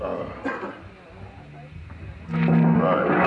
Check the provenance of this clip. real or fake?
real